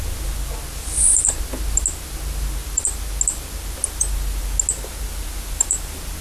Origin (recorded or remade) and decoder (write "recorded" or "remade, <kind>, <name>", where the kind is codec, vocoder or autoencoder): recorded